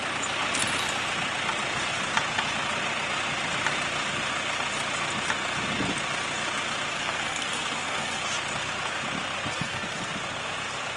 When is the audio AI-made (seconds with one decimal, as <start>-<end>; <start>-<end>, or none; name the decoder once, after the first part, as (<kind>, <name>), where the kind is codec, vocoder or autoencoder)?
6.9-8.2 (codec, SNAC); 9.5-10.1